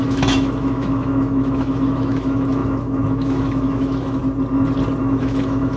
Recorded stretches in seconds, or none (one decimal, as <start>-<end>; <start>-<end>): 4.2-5.0